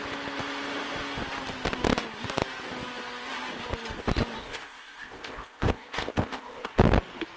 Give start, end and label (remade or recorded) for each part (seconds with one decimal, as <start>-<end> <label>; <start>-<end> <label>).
0.0-4.4 recorded; 4.4-6.8 remade; 6.8-7.4 recorded